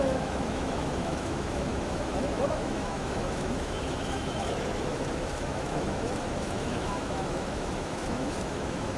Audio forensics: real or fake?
fake